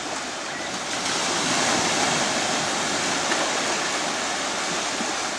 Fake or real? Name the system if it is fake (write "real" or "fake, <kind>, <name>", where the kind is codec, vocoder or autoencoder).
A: real